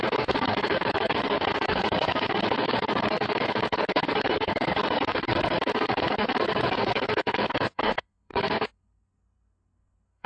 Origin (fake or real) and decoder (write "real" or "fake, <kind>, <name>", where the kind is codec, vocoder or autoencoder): fake, codec, SNAC